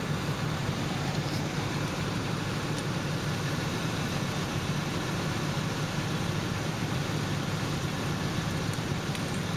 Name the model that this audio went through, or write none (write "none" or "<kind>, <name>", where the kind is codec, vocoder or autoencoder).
vocoder, BigVGAN v2